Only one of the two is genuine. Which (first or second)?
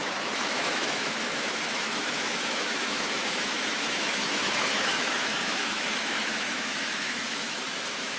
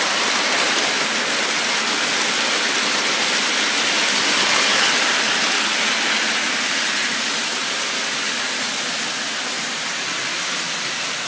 second